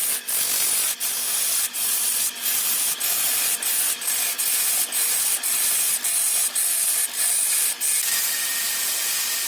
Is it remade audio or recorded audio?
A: recorded